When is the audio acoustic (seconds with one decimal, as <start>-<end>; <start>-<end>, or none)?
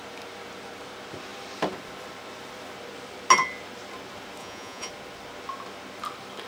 0.0-4.4; 4.9-6.5